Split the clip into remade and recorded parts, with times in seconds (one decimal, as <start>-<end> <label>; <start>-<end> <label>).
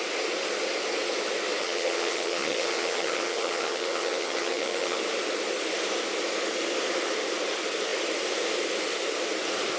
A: 0.0-1.6 recorded; 1.6-5.0 remade; 5.0-9.8 recorded